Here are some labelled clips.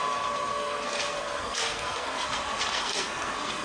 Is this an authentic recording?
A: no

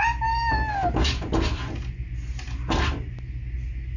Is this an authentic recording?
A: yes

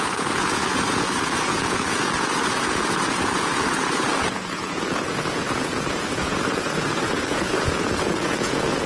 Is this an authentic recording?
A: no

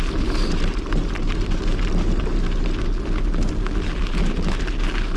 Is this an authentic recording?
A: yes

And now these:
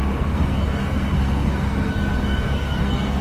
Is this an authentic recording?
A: no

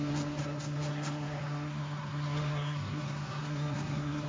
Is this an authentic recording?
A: no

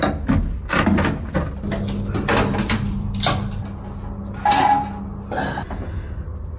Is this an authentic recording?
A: yes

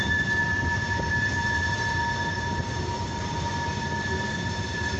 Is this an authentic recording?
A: no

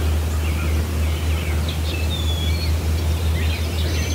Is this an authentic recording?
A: yes